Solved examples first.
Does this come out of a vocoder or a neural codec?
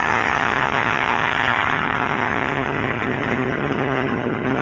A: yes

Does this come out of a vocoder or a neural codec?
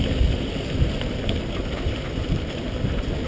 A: no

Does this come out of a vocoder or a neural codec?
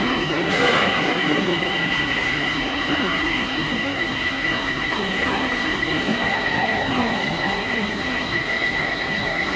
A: yes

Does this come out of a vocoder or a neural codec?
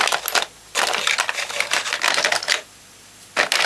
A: no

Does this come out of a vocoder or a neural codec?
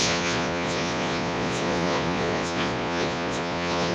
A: yes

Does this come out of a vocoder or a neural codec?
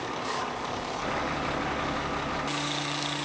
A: yes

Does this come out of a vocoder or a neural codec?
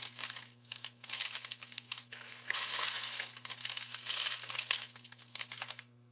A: yes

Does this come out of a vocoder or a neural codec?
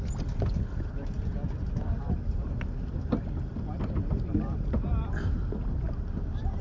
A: no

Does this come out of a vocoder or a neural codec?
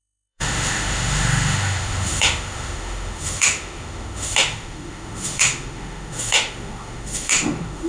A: yes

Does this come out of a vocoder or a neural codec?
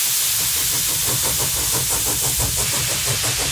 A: no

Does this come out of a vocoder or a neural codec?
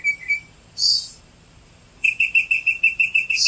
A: yes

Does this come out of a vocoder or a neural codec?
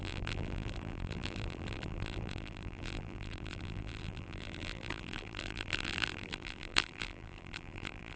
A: yes